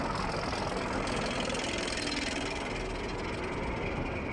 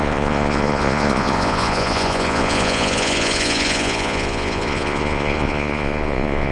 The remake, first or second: second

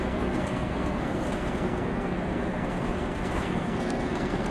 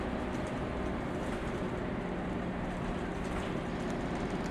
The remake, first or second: first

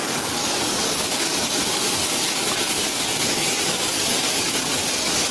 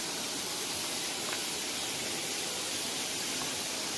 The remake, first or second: first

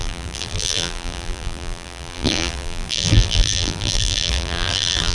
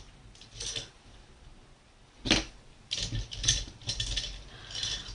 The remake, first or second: first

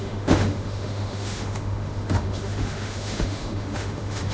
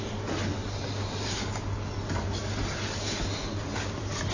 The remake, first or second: first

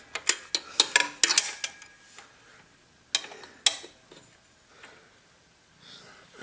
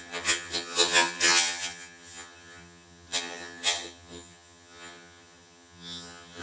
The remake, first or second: second